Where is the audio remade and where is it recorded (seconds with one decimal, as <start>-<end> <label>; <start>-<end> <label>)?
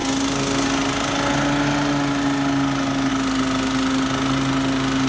0.0-5.1 recorded